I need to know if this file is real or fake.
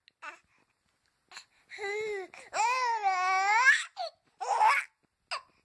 real